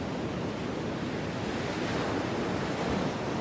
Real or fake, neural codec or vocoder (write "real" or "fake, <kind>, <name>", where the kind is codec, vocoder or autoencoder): real